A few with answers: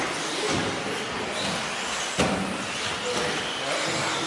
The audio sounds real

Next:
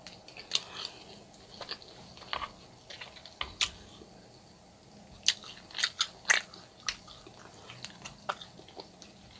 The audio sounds real